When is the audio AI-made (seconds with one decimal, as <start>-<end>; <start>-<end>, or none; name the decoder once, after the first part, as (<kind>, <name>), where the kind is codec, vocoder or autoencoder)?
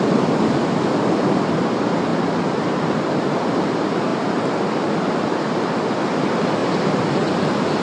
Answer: 2.1-3.2 (vocoder, BigVGAN v2); 4.1-5.4